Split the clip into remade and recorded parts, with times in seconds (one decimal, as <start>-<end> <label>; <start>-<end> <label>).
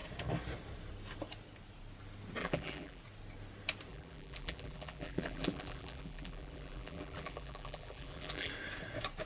0.0-2.4 recorded; 2.4-3.0 remade; 3.0-3.9 recorded; 3.9-8.5 remade; 8.5-9.3 recorded